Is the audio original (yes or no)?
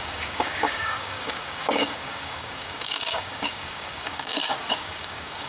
no